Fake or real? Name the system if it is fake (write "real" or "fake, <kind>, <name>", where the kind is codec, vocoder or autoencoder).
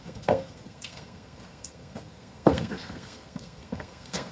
fake, codec, SNAC